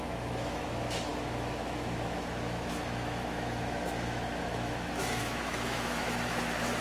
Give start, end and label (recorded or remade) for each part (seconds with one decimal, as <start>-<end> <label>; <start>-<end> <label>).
0.0-6.8 remade